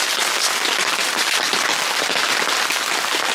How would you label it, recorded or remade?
recorded